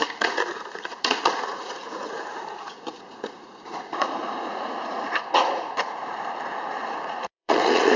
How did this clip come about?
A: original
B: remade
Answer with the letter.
B